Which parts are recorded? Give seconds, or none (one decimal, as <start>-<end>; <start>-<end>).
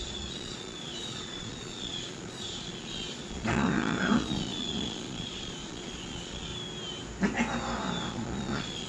6.5-8.1